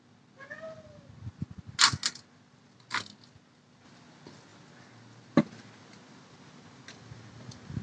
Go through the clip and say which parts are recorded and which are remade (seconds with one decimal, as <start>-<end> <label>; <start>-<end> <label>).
0.0-7.8 recorded